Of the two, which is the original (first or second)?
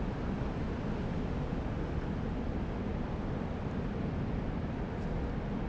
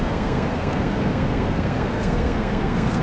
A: first